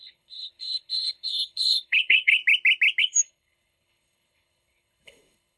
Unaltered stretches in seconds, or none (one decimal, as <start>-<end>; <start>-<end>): 2.4-3.0